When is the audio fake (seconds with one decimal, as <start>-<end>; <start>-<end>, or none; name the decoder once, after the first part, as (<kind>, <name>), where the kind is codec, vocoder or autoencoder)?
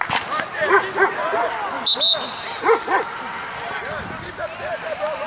none